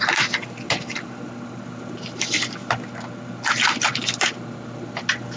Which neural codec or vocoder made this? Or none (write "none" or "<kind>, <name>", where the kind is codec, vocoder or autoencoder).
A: none